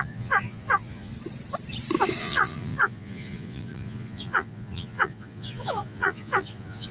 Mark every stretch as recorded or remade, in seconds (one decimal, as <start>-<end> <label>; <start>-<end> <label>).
0.0-1.1 remade; 1.1-2.2 recorded; 2.2-6.9 remade